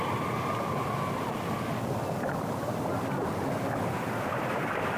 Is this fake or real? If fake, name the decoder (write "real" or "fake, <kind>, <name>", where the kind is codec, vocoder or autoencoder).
real